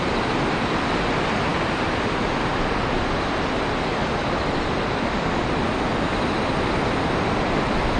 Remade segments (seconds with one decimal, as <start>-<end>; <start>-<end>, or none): none